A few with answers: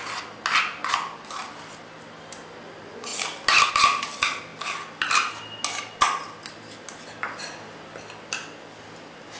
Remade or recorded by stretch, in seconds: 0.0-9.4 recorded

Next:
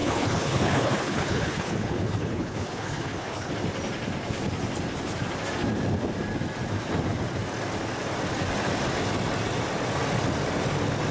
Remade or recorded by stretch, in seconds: 0.0-3.5 remade; 3.5-11.1 recorded

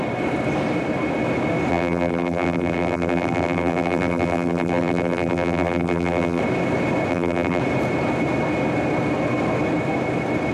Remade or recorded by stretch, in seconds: 0.0-1.7 recorded; 1.7-6.4 remade; 6.4-7.1 recorded; 7.1-7.6 remade; 7.6-10.5 recorded

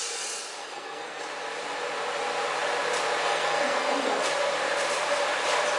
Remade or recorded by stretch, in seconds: 0.0-0.6 recorded; 0.6-1.2 remade; 1.2-3.2 recorded; 3.2-4.2 remade; 4.2-5.8 recorded

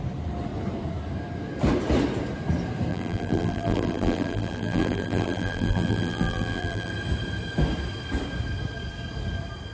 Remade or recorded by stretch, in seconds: 0.0-2.9 recorded; 2.9-6.9 remade; 6.9-9.7 recorded

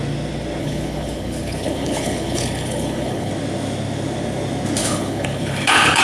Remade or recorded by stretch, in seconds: 0.0-0.6 recorded; 0.6-3.3 remade; 3.3-4.8 recorded; 4.8-6.0 remade

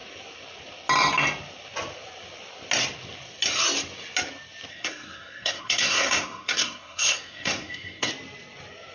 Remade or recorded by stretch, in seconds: 0.0-4.7 recorded; 4.7-8.1 remade; 8.1-8.9 recorded